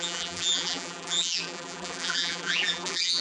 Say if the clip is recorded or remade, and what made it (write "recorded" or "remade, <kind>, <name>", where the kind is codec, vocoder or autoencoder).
remade, vocoder, BigVGAN v2